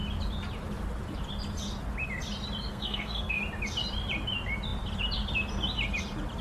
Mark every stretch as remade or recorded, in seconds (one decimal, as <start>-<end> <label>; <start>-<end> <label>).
0.0-2.7 recorded; 2.7-3.4 remade; 3.4-6.4 recorded